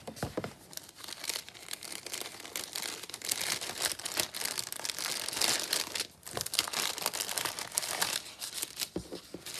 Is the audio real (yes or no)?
yes